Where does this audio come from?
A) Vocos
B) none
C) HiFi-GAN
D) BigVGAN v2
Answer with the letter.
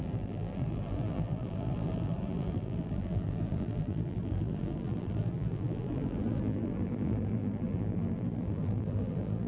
D